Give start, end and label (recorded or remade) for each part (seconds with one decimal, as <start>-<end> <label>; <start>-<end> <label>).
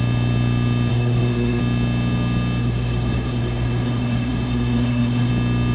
0.0-0.9 recorded; 0.9-1.6 remade; 1.6-2.6 recorded; 2.6-5.3 remade; 5.3-5.7 recorded